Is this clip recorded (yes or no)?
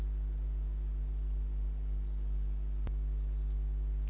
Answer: yes